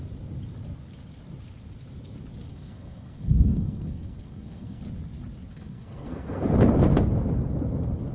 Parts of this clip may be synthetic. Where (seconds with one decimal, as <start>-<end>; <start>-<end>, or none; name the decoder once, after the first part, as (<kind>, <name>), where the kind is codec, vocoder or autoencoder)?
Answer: 2.5-4.8 (codec, SNAC); 5.5-6.4